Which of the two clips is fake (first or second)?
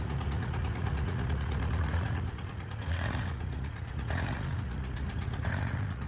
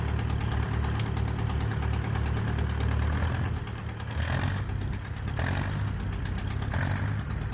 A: first